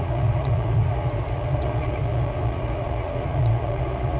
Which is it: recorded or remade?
remade